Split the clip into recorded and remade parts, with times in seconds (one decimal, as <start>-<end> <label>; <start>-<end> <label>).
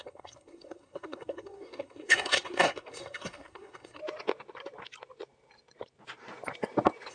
0.0-4.0 remade; 4.0-7.1 recorded